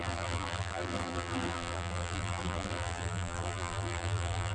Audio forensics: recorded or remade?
remade